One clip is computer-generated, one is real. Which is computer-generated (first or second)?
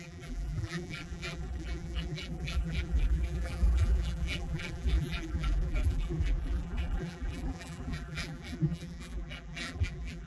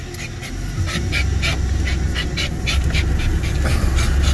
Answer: first